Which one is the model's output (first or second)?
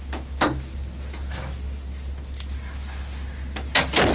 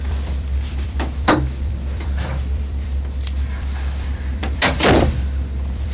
second